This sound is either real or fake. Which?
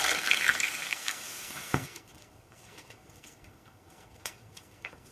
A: fake